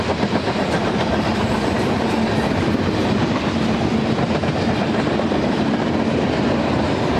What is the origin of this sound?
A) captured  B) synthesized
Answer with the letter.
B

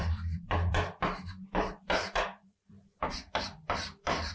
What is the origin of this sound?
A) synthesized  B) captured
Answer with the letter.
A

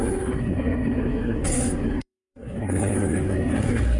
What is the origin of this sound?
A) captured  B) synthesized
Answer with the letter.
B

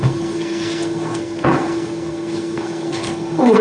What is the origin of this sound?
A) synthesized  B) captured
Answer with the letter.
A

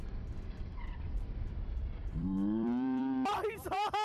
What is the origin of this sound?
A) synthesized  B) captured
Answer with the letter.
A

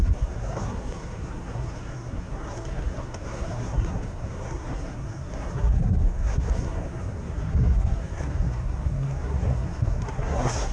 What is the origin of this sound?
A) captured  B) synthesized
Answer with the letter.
B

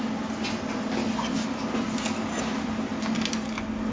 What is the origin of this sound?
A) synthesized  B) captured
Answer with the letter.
B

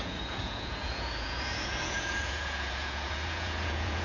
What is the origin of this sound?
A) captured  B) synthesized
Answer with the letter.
B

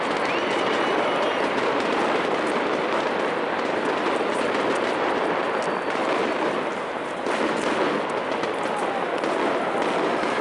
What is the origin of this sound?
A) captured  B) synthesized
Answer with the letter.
A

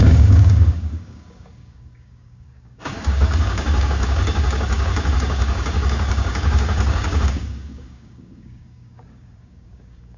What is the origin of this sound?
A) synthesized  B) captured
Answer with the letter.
A